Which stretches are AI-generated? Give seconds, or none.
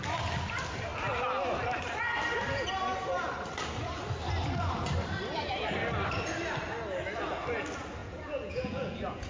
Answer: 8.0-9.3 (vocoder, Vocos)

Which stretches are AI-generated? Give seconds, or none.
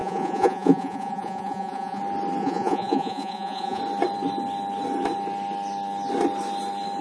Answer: 0.0-2.0 (vocoder, Vocos); 2.4-3.8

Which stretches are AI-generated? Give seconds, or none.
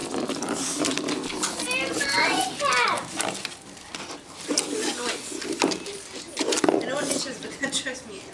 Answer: 0.0-0.9 (vocoder, BigVGAN v2)